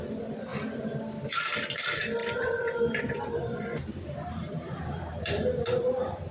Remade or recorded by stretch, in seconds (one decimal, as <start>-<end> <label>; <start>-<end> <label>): 0.0-0.5 recorded; 0.5-1.4 remade; 1.4-2.2 recorded; 2.2-6.3 remade